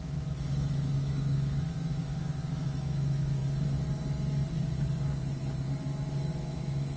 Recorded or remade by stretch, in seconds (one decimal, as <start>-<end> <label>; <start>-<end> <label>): 0.0-3.4 remade; 3.4-6.3 recorded; 6.3-7.0 remade

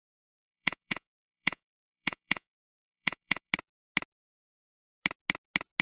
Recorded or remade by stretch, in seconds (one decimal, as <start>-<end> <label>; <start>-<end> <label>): 0.0-3.5 remade; 3.5-5.8 recorded